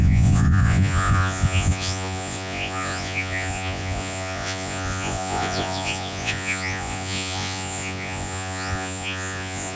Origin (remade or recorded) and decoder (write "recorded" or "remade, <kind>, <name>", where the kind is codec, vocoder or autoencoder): remade, vocoder, Vocos